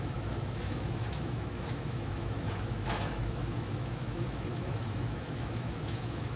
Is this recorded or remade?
remade